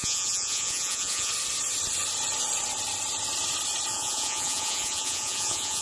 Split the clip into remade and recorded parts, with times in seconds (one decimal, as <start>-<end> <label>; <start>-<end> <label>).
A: 0.0-1.3 remade; 1.3-3.9 recorded; 3.9-5.8 remade